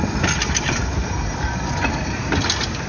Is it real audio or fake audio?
real